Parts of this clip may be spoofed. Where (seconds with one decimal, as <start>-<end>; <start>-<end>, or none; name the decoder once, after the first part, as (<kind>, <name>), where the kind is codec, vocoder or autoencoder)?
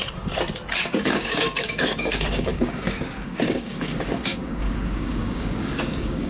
0.8-6.3 (codec, DAC)